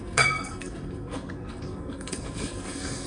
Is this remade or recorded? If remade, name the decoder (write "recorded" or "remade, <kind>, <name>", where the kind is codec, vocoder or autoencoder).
remade, codec, SNAC